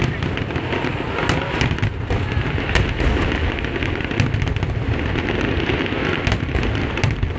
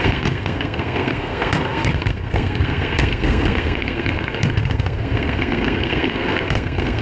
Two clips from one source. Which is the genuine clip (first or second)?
first